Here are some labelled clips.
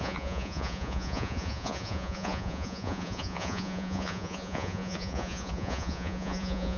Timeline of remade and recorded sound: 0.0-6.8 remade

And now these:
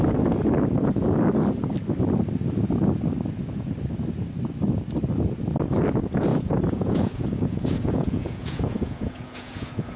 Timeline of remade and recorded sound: 0.0-6.3 recorded; 6.3-10.0 remade

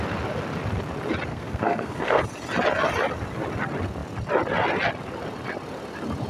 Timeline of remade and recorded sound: 0.0-1.3 recorded; 1.3-2.2 remade; 2.2-6.3 recorded

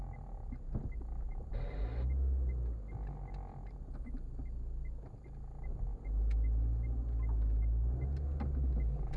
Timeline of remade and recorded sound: 0.0-9.2 recorded

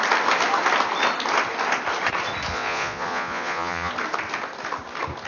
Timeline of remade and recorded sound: 0.0-2.5 recorded; 2.5-3.9 remade; 3.9-5.3 recorded

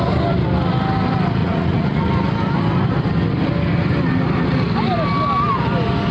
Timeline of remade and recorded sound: 0.0-1.4 recorded; 1.4-2.0 remade; 2.0-6.1 recorded

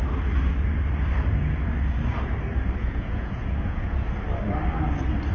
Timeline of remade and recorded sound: 0.0-2.8 recorded; 2.8-4.1 remade; 4.1-5.3 recorded

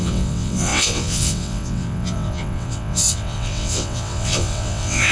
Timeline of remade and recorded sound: 0.0-5.1 remade